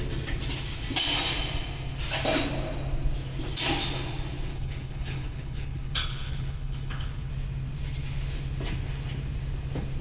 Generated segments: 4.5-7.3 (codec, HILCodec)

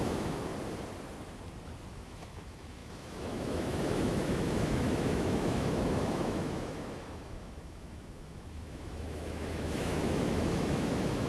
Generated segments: 0.0-0.5 (autoencoder, DAC-VAE); 1.9-11.3

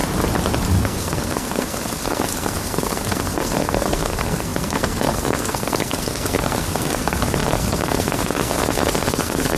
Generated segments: 0.7-9.6 (codec, SNAC)

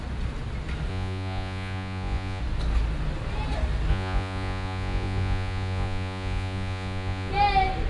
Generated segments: 0.9-2.4 (vocoder, Vocos); 3.9-7.3

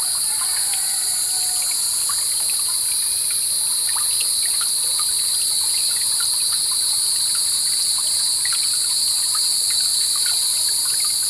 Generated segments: 4.2-6.5 (vocoder, BigVGAN v2); 7.4-8.2; 9.9-10.5

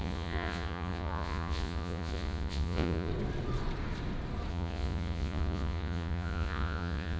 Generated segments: 0.0-3.1 (vocoder, Vocos); 4.5-7.2